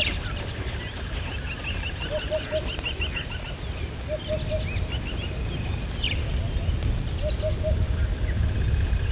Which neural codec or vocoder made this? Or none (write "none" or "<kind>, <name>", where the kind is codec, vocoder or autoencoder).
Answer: none